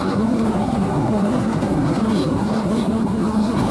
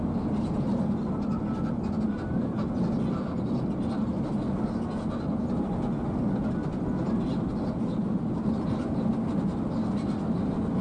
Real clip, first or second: second